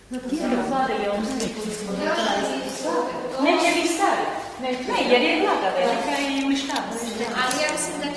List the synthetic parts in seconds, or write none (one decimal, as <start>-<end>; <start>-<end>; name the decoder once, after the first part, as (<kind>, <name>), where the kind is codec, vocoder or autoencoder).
0.5-4.4 (autoencoder, DAC-VAE)

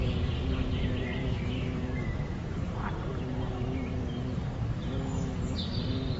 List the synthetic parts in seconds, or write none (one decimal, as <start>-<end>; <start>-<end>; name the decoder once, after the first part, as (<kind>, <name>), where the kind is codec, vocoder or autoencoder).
1.2-2.7 (autoencoder, DAC-VAE)

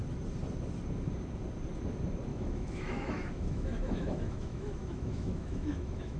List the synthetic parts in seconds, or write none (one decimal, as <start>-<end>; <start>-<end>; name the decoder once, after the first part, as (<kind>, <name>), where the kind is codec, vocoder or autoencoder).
2.3-6.2 (autoencoder, DAC-VAE)

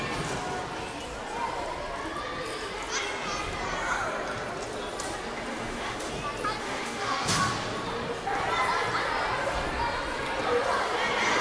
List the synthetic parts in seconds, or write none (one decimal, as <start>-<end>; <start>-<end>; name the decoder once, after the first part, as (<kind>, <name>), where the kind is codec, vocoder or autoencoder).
5.5-6.1 (autoencoder, DAC-VAE); 6.6-7.5

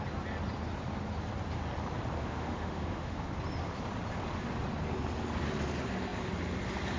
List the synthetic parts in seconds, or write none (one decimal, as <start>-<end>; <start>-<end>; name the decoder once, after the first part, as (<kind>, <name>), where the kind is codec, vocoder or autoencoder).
2.2-3.3 (autoencoder, DAC-VAE)